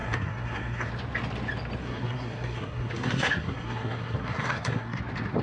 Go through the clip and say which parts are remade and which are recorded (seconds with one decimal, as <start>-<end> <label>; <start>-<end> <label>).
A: 0.0-0.9 remade; 0.9-1.8 recorded; 1.8-5.0 remade; 5.0-5.4 recorded